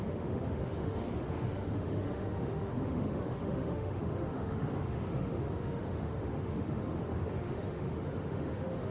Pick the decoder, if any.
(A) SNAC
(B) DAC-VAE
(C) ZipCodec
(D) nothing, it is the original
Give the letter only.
B